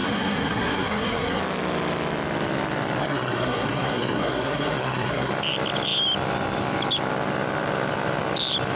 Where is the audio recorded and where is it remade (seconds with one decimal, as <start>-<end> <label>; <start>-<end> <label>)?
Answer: 0.0-1.4 remade; 1.4-3.0 recorded; 3.0-5.3 remade; 5.3-8.8 recorded